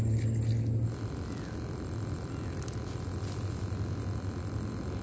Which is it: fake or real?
real